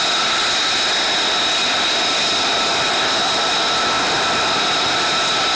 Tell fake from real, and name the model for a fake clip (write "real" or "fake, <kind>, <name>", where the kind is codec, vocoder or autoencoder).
real